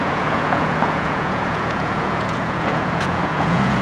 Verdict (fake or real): fake